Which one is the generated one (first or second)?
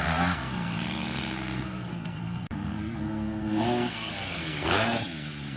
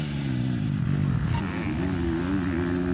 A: first